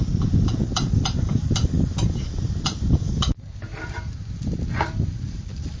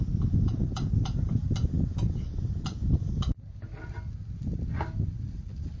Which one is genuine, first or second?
second